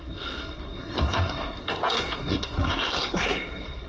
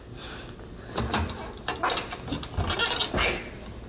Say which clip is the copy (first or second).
first